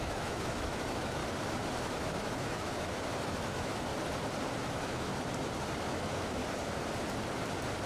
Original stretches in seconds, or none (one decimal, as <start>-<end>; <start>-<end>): 1.2-1.8; 3.9-4.6; 5.1-5.8; 6.4-7.9